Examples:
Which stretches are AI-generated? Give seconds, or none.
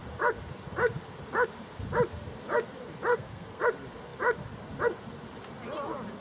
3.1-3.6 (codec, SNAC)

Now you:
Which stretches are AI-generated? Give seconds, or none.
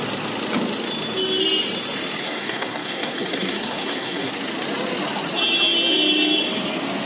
2.2-4.3 (codec, SNAC)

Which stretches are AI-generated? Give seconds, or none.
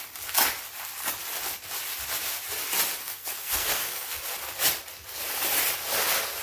3.0-4.2 (codec, SNAC)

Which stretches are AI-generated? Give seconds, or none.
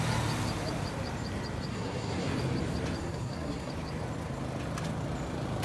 1.7-2.3 (codec, SNAC); 3.0-3.7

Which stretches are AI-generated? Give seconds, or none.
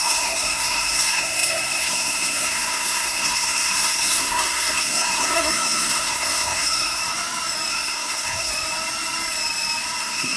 0.0-7.0 (codec, SNAC); 7.7-8.5; 10.0-10.4